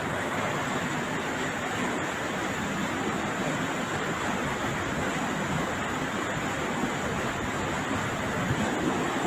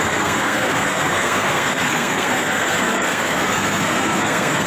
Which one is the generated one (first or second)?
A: second